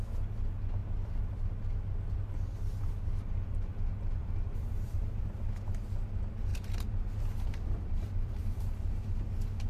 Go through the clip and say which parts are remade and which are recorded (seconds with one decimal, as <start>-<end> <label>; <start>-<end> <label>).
0.0-4.2 recorded; 4.2-5.2 remade; 5.2-6.5 recorded; 6.5-8.6 remade; 8.6-9.7 recorded